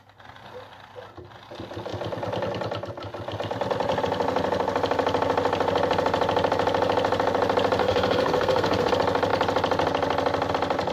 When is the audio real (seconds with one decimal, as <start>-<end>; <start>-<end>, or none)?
0.0-7.8; 8.9-10.9